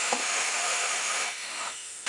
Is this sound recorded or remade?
remade